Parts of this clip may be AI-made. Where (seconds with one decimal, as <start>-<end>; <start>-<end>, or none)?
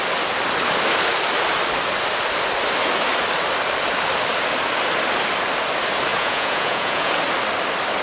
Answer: 6.1-7.1